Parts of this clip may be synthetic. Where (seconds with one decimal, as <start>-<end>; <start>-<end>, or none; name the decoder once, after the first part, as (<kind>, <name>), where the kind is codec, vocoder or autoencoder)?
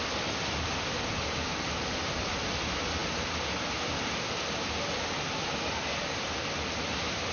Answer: none